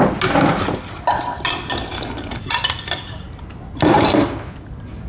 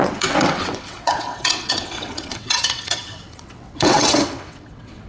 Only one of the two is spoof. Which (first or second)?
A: second